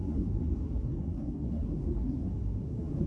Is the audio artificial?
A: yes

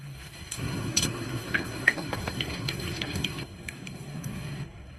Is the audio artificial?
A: yes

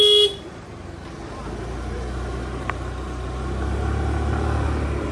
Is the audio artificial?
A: no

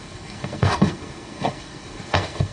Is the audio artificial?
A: yes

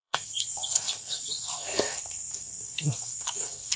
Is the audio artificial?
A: yes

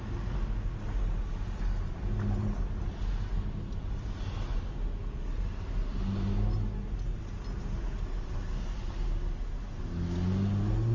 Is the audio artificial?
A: no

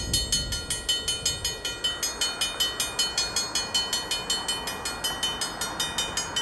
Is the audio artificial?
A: no